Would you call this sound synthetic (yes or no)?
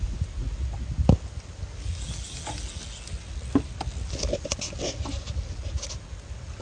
no